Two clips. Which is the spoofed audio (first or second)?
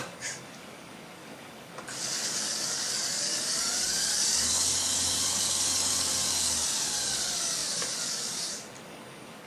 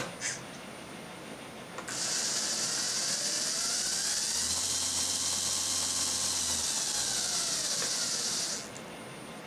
first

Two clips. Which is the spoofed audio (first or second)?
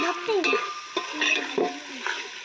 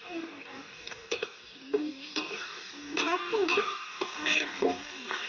second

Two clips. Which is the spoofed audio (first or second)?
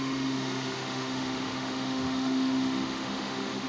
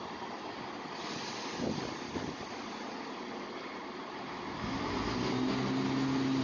first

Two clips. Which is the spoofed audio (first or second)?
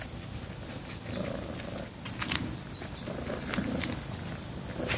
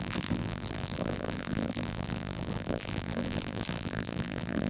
second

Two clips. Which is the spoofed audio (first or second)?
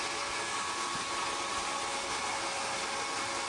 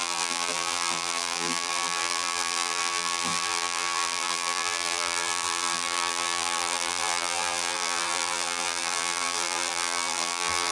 second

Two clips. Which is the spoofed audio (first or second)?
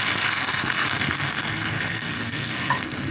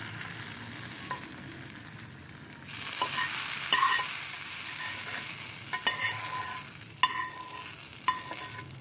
first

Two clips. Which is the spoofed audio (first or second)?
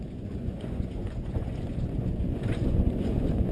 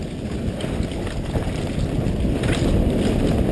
first